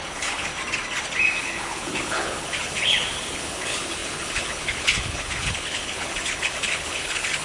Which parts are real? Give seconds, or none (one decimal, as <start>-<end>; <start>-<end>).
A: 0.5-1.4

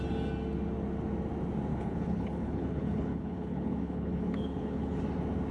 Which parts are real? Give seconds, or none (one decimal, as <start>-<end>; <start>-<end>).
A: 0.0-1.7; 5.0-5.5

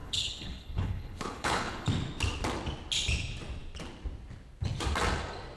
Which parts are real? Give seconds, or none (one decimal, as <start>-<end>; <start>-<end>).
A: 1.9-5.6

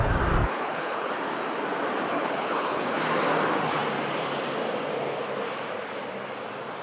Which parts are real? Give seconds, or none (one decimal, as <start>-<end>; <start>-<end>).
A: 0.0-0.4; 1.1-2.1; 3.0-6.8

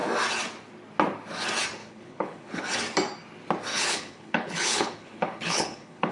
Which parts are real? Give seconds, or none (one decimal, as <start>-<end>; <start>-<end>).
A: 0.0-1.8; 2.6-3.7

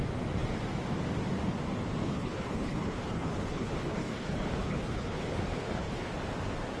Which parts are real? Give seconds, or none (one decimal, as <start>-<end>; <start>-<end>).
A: 0.0-2.0; 6.1-6.8

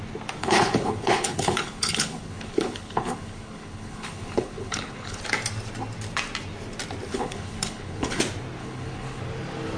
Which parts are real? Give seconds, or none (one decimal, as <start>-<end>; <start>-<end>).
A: 0.0-0.4; 5.2-7.1; 8.2-8.6; 9.2-9.8

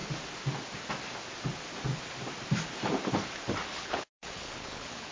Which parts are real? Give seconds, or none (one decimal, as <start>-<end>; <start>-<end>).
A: 0.0-3.6